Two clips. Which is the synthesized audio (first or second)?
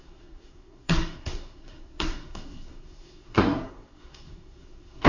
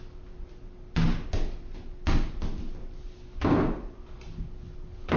first